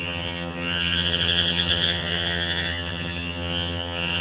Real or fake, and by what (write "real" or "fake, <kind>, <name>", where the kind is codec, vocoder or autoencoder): fake, vocoder, HiFi-GAN